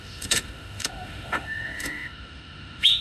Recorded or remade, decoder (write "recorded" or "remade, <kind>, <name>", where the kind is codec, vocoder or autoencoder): remade, autoencoder, DAC-VAE